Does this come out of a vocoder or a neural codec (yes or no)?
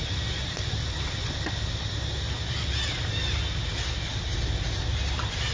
no